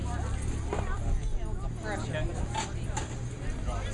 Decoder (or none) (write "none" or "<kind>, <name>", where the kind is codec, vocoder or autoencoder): none